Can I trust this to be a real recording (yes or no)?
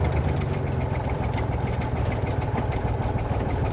no